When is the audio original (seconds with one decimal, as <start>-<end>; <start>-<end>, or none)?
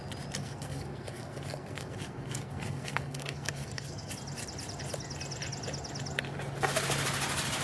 0.0-0.4; 4.1-7.6